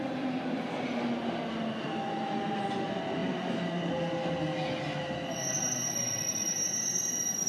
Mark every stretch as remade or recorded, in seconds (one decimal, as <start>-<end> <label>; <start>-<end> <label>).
0.0-7.5 recorded